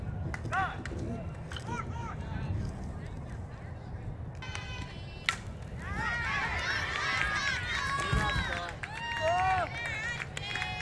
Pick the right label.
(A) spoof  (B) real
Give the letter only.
B